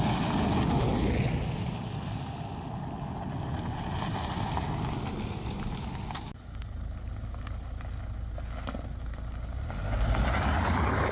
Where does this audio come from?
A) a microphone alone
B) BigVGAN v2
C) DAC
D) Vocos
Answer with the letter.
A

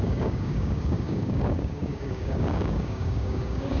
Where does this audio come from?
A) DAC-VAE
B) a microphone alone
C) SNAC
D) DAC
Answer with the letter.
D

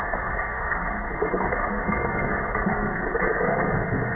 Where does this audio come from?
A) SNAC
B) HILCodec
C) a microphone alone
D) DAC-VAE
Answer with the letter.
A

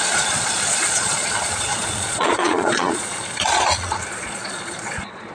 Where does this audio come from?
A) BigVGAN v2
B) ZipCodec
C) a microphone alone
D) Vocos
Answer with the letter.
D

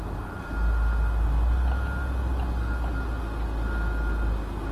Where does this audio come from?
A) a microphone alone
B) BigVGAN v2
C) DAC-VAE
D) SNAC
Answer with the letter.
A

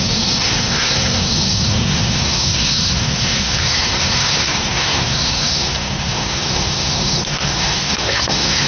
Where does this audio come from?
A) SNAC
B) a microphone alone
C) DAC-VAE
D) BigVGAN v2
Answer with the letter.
A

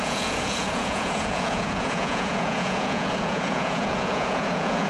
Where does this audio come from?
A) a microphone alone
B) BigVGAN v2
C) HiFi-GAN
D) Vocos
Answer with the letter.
D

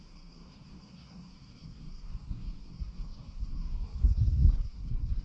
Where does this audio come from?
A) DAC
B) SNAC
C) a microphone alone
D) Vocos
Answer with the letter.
B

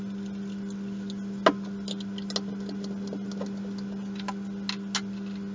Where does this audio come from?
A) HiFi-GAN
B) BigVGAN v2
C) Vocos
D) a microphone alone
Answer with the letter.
D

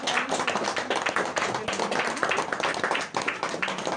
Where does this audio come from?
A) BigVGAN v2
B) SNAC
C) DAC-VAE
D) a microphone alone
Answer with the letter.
D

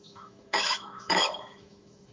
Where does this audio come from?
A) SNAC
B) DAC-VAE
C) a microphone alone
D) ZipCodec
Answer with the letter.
B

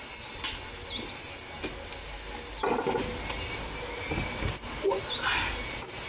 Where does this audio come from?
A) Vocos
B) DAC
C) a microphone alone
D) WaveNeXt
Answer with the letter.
C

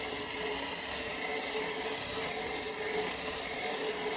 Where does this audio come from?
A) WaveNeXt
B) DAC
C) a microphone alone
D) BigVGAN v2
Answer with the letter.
C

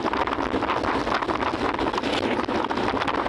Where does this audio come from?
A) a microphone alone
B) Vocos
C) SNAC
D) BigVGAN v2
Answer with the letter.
A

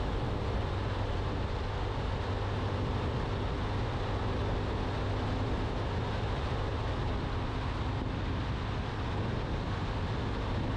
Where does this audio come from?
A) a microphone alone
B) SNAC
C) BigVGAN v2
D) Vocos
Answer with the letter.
A